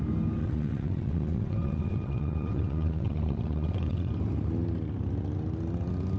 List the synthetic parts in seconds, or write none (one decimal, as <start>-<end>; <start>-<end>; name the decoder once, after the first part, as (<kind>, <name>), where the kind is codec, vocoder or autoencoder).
0.4-4.1 (vocoder, WaveNeXt)